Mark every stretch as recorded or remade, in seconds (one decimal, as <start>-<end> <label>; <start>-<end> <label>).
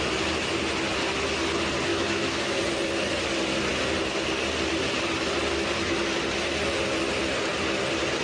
0.0-1.9 recorded; 1.9-2.6 remade; 2.6-8.2 recorded